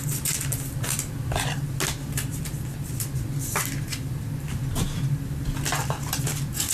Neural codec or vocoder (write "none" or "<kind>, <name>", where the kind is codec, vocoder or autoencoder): none